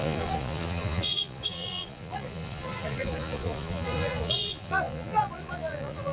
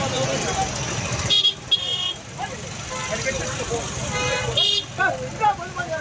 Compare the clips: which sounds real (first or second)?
second